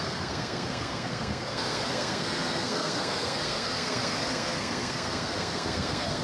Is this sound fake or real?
fake